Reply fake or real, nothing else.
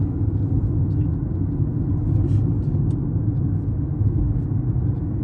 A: real